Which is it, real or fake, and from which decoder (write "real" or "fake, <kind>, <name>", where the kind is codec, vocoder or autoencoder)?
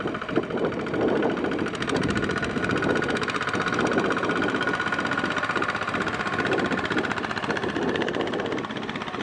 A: fake, vocoder, BigVGAN v2